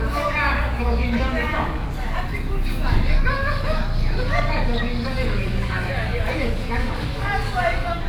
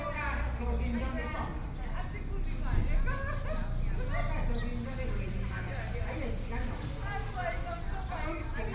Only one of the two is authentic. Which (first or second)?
second